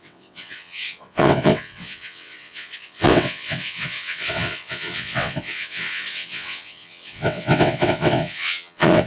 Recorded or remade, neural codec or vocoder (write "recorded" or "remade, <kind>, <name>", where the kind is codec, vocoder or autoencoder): remade, vocoder, WaveNeXt